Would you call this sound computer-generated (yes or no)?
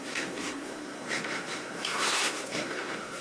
yes